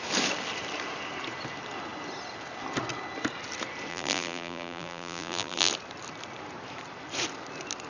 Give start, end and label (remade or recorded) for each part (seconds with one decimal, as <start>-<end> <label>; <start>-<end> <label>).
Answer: 0.0-3.9 recorded; 3.9-5.7 remade; 5.7-7.9 recorded